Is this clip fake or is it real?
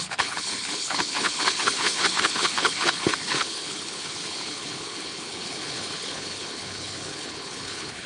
fake